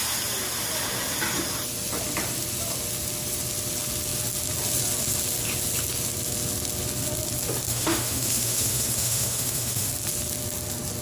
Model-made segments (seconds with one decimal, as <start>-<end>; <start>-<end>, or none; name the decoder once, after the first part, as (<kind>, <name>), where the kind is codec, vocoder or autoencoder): 7.7-9.9 (autoencoder, DAC-VAE)